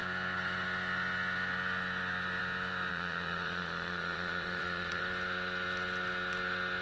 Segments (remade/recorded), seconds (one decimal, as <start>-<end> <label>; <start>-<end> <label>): 0.0-2.9 recorded; 2.9-5.0 remade; 5.0-6.8 recorded